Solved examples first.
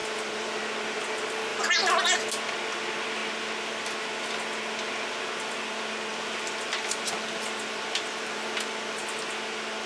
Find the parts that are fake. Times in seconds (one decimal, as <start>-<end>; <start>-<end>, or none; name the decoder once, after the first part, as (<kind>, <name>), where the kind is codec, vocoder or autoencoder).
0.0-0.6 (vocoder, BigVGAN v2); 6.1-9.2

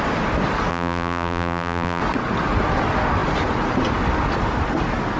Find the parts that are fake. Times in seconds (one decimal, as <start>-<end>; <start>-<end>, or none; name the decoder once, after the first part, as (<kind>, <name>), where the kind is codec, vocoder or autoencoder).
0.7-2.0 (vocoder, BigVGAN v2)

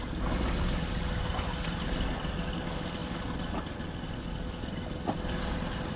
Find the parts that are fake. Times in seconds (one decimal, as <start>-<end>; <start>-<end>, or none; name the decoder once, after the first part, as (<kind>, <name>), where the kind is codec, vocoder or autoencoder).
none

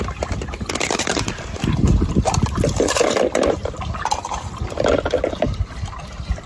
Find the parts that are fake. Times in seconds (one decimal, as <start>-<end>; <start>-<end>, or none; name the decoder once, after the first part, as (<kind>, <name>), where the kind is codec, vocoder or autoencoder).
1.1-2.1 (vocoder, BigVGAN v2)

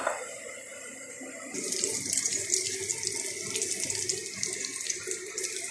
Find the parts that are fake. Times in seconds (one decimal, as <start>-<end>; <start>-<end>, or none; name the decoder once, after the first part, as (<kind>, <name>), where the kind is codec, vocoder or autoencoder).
0.0-2.9 (vocoder, BigVGAN v2); 4.1-4.7; 5.3-5.7